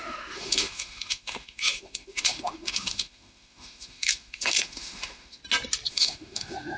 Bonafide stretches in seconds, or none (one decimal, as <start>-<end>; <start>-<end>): 5.4-5.9